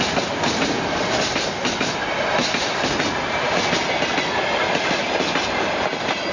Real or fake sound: real